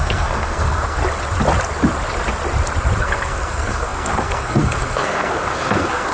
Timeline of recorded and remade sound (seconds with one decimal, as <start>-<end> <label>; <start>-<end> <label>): 0.0-1.0 remade; 1.0-3.0 recorded; 3.0-6.1 remade